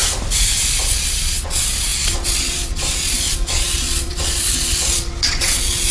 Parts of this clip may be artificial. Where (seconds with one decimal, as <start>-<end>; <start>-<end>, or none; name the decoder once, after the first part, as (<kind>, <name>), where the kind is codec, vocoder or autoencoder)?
0.8-5.9 (vocoder, Vocos)